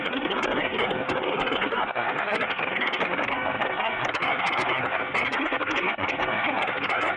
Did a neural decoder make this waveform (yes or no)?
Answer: yes